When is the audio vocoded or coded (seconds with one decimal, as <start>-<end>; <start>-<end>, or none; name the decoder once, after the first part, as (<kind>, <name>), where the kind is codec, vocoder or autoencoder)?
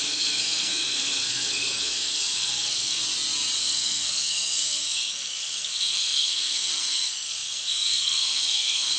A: 0.0-3.0 (codec, SNAC); 3.6-9.0